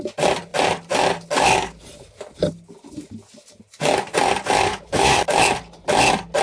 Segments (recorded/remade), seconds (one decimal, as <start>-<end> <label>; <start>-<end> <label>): 0.0-4.7 recorded; 4.7-5.2 remade; 5.2-6.4 recorded